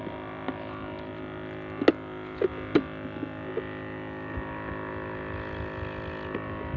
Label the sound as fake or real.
real